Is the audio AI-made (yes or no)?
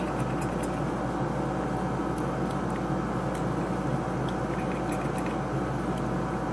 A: no